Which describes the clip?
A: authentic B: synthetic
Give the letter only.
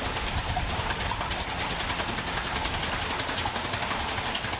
A